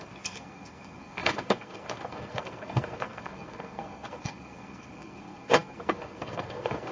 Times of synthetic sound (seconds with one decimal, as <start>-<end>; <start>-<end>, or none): 0.0-6.9